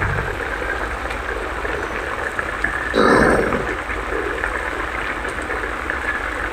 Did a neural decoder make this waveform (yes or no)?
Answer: no